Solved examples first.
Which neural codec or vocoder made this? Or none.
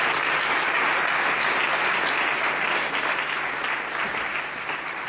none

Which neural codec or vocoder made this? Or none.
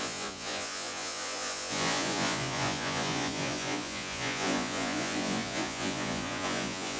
vocoder, Vocos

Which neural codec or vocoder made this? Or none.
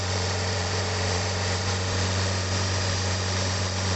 vocoder, Vocos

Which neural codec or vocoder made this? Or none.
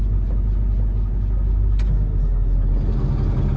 none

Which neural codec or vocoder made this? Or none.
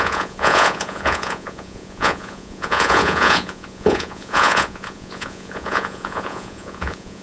vocoder, Vocos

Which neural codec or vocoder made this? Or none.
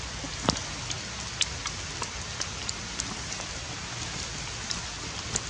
none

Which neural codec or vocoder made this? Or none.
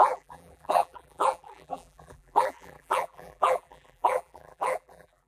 vocoder, BigVGAN v2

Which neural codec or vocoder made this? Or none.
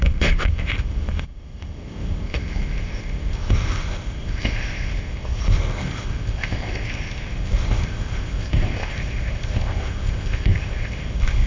codec, ZipCodec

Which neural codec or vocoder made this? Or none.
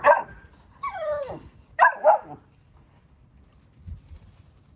none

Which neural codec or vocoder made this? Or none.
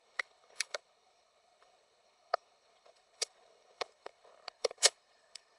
codec, HILCodec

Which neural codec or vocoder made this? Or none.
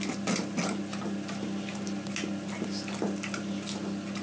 none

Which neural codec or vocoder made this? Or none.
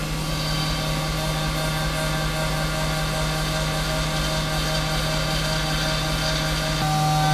none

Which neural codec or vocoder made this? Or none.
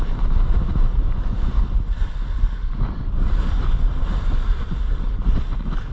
none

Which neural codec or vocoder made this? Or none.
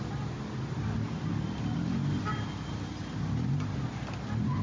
none